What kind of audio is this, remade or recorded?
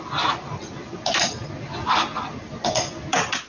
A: recorded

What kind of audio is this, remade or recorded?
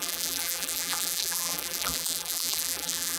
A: remade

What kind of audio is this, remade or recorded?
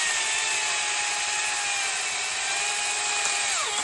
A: recorded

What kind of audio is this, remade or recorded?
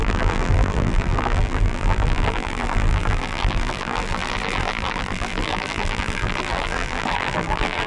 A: remade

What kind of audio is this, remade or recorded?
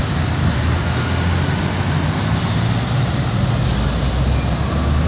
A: recorded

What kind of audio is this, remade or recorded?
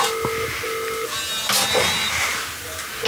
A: recorded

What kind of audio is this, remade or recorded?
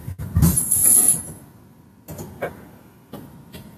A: recorded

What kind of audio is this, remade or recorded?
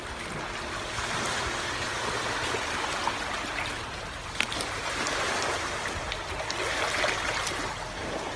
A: recorded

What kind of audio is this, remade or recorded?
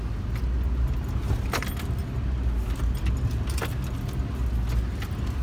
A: recorded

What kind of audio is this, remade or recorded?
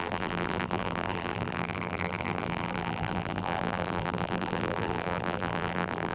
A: remade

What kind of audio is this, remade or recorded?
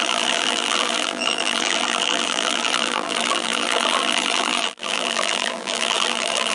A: remade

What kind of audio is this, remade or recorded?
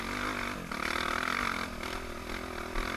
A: recorded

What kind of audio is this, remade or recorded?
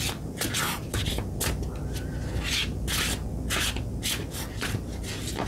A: recorded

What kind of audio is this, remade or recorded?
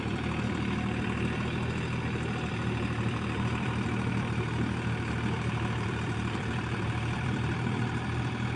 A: remade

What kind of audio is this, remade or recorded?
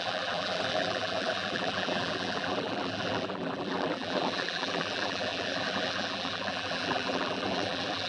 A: remade